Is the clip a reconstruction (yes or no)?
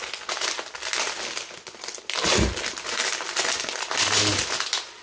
no